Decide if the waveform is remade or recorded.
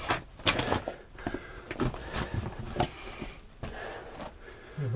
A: recorded